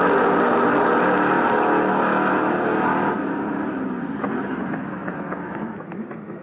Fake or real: real